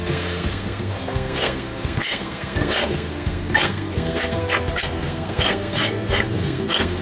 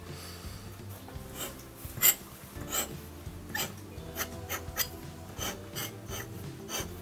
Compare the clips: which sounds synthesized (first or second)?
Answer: first